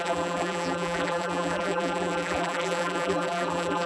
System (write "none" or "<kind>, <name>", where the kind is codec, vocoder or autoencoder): vocoder, BigVGAN v2